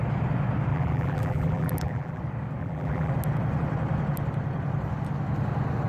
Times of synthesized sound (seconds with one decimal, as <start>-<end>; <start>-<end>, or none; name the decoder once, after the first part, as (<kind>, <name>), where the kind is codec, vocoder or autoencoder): 0.7-2.2 (vocoder, BigVGAN v2); 2.6-3.1